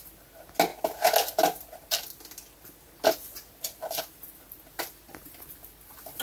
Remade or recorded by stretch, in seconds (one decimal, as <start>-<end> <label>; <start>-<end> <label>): 0.0-6.2 recorded